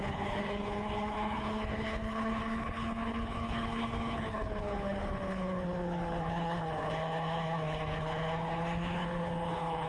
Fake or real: fake